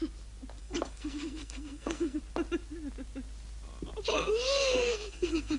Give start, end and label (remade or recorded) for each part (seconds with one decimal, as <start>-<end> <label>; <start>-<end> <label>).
0.0-0.6 recorded; 0.6-2.2 remade; 2.2-4.1 recorded; 4.1-5.6 remade